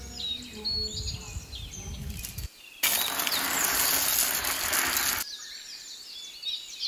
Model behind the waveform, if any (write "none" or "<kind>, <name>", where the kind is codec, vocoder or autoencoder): none